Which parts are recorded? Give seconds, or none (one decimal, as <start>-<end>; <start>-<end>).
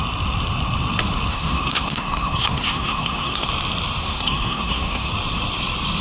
0.0-1.3; 3.5-4.0; 5.1-6.0